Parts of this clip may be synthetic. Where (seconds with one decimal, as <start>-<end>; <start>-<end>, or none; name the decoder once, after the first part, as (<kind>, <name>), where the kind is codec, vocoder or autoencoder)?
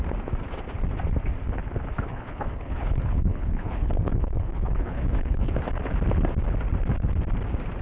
1.9-5.5 (codec, HILCodec)